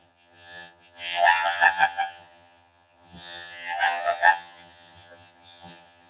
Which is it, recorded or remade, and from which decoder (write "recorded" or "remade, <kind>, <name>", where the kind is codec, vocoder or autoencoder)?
remade, vocoder, HiFi-GAN